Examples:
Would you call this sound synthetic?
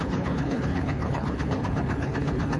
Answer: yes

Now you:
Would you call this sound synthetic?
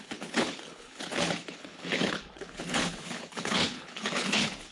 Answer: yes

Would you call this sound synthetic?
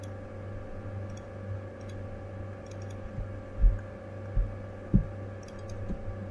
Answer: no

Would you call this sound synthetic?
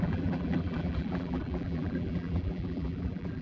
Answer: yes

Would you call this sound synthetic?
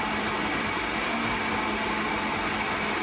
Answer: no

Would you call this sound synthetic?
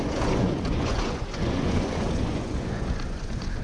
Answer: yes